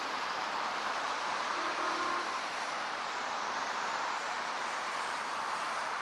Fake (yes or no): yes